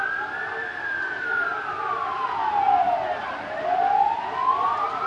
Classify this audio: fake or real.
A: real